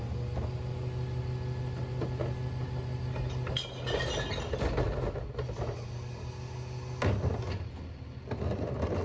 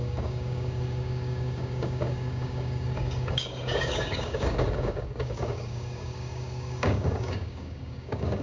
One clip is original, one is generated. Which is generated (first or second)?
second